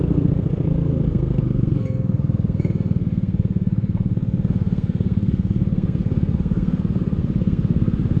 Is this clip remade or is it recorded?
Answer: remade